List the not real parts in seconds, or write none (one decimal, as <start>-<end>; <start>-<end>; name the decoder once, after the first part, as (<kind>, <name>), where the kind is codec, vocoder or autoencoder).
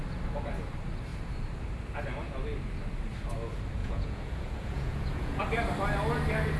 3.8-5.4 (vocoder, Vocos)